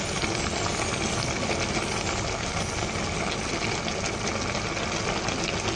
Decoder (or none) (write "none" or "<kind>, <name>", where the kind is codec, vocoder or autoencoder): none